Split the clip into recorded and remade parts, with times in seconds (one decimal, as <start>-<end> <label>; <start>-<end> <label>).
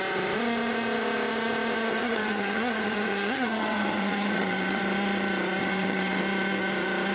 0.0-1.8 recorded; 1.8-4.8 remade; 4.8-5.6 recorded; 5.6-6.2 remade; 6.2-7.1 recorded